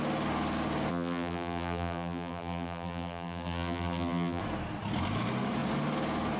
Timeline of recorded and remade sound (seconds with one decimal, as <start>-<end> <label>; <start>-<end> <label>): 0.0-0.9 recorded; 0.9-4.4 remade; 4.4-6.4 recorded